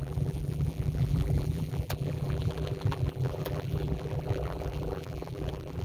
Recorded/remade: remade